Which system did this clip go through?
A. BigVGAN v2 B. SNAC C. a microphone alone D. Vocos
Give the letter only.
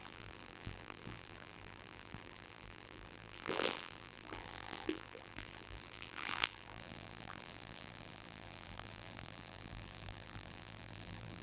A